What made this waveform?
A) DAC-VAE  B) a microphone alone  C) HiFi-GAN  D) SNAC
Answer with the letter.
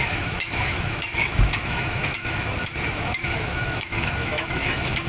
A